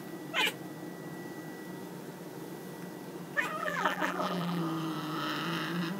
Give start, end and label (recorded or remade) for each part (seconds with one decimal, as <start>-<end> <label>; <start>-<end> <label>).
0.0-3.6 recorded; 3.6-4.6 remade; 4.6-6.0 recorded